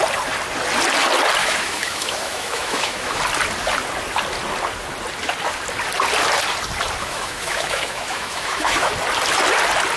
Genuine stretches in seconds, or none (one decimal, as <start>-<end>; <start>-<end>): 0.0-1.4; 3.2-7.0; 8.9-10.0

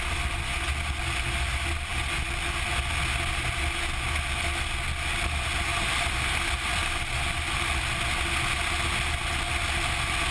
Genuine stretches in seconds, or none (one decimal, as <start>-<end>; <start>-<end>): 0.0-10.3

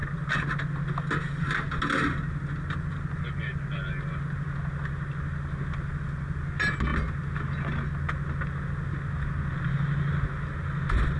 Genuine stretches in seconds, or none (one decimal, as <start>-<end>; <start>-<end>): 0.0-11.2

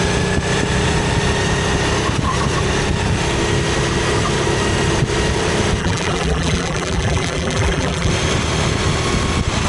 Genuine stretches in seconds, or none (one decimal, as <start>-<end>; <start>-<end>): 0.0-5.8; 8.1-9.7

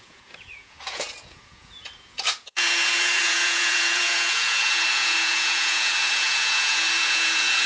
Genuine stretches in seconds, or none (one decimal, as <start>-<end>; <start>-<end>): none

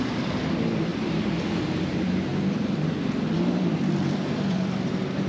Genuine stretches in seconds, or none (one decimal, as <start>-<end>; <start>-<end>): none

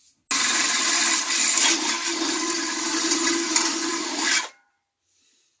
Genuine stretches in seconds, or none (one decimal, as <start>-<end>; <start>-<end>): 0.0-2.9; 4.9-5.6